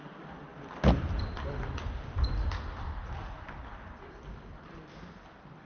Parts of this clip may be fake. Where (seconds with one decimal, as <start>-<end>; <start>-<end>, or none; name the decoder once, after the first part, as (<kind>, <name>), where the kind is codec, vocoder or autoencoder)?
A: none